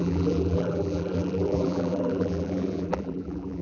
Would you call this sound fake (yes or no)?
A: yes